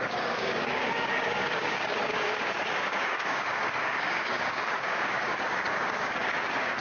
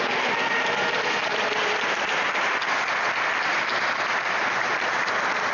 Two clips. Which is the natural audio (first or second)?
second